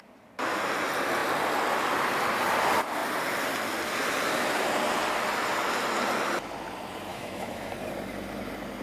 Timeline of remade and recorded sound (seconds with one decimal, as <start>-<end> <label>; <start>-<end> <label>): 0.0-7.1 recorded; 7.1-7.7 remade; 7.7-8.8 recorded